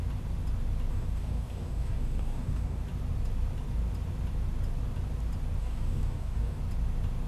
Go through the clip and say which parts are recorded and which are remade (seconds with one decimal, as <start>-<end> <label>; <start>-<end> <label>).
0.0-0.9 recorded; 0.9-2.8 remade; 2.8-5.6 recorded; 5.6-6.6 remade; 6.6-7.3 recorded